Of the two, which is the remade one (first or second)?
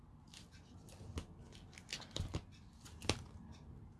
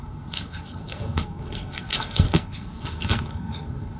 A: second